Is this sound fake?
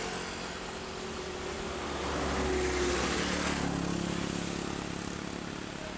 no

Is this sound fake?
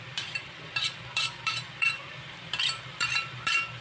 yes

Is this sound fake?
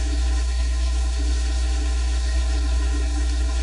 yes